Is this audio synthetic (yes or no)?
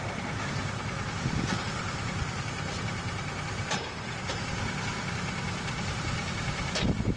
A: yes